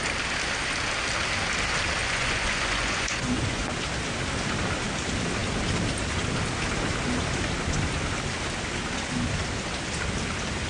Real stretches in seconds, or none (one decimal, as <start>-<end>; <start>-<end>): 0.0-2.0; 3.7-10.7